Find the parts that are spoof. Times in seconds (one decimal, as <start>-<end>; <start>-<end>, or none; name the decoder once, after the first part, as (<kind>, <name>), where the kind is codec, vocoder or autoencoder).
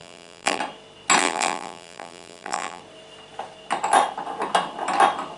0.0-0.6 (vocoder, BigVGAN v2); 1.2-2.8